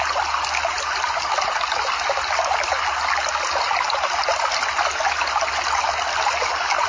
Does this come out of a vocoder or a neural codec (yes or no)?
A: no